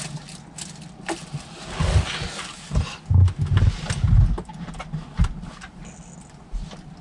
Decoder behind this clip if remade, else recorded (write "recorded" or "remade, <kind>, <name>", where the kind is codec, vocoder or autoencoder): recorded